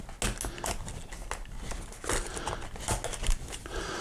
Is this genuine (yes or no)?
yes